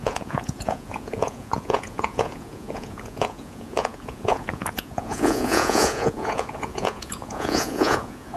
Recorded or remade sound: remade